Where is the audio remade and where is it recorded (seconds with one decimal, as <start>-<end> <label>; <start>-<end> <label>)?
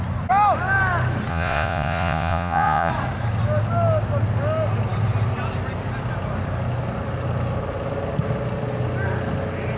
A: 0.0-1.3 recorded; 1.3-2.9 remade; 2.9-9.8 recorded